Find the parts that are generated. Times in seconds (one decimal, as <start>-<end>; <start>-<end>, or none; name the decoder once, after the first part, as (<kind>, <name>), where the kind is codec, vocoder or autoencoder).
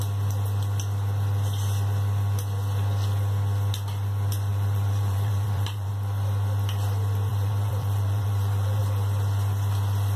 4.5-5.9 (vocoder, BigVGAN v2); 7.3-8.8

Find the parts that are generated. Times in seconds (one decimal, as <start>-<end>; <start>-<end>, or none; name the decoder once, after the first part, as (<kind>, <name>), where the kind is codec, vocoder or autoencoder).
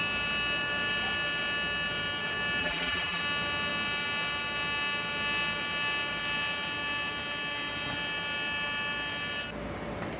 2.6-3.2 (vocoder, BigVGAN v2)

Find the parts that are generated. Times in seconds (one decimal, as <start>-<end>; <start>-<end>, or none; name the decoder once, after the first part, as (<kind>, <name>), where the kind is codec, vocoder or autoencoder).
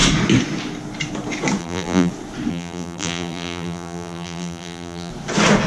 1.6-2.1 (vocoder, BigVGAN v2); 2.5-5.1